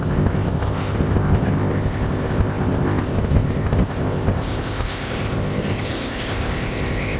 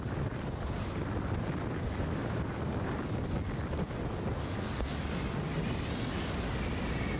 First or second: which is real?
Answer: second